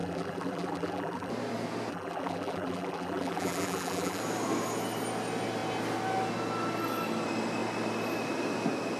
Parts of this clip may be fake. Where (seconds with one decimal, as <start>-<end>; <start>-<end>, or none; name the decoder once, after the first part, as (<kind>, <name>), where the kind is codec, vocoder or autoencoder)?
0.0-1.3 (vocoder, BigVGAN v2); 1.9-4.2